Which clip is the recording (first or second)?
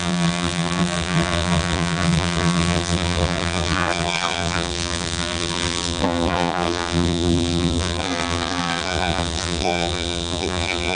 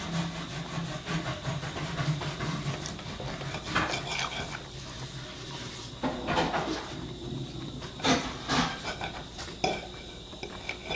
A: second